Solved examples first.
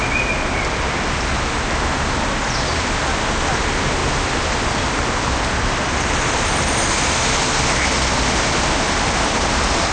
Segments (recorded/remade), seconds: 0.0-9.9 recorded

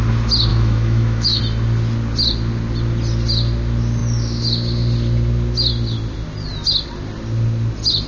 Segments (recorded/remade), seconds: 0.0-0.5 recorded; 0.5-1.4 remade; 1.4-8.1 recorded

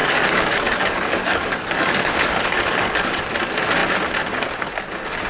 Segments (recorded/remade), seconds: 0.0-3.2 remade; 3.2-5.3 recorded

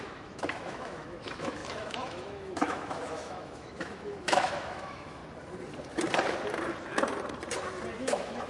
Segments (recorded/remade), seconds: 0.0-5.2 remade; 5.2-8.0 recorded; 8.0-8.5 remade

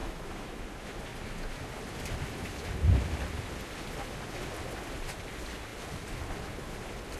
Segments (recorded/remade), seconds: 0.0-0.6 remade; 0.6-7.2 recorded

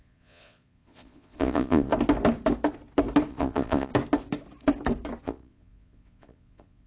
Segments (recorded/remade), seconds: 0.0-1.9 remade; 1.9-3.3 recorded; 3.3-3.9 remade; 3.9-5.2 recorded; 5.2-6.9 remade

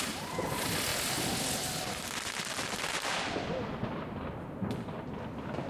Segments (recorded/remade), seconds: 0.0-5.7 recorded